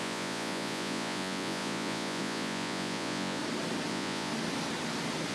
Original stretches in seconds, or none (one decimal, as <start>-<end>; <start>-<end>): 3.4-3.9; 4.3-5.3